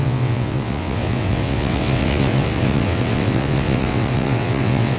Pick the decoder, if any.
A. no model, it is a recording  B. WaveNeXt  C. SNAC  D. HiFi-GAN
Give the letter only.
B